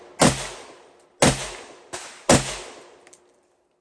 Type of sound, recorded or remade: recorded